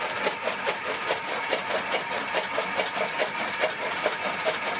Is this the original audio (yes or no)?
no